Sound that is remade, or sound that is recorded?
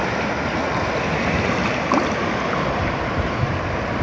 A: recorded